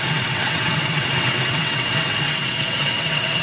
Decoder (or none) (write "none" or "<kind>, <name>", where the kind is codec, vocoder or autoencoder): vocoder, WaveNeXt